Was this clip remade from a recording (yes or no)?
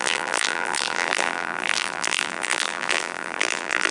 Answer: yes